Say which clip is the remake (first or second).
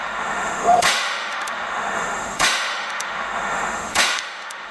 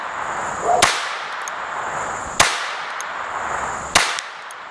first